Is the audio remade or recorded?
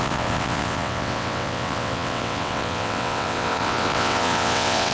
remade